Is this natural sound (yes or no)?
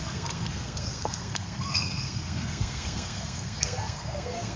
no